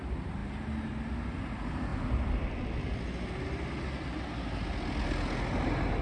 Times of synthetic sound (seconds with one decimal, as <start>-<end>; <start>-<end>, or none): none